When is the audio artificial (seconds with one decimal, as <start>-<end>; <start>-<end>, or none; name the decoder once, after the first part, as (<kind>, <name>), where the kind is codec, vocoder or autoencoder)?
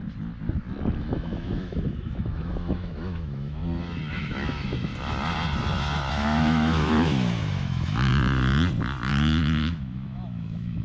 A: 1.0-3.6 (autoencoder, DAC-VAE); 4.1-4.9; 6.1-8.1; 9.1-10.8